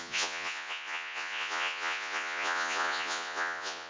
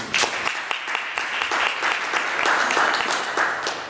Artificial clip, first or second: first